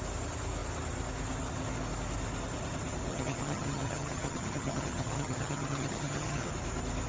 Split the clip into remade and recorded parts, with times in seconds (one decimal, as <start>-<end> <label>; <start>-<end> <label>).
0.0-3.1 recorded; 3.1-6.5 remade; 6.5-7.1 recorded